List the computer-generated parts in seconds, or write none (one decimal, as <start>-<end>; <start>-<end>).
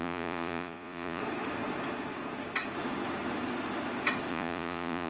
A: 0.0-1.2; 4.3-5.1